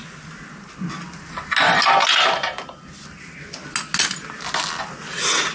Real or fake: real